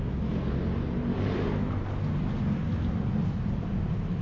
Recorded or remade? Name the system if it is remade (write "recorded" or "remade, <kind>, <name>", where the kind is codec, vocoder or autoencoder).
recorded